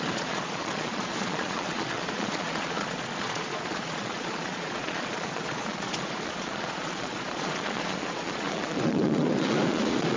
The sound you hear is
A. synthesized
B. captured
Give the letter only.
A